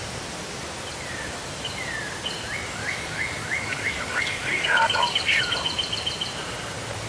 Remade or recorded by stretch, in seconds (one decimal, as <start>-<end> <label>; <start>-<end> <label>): 0.0-2.8 recorded; 2.8-5.4 remade; 5.4-7.1 recorded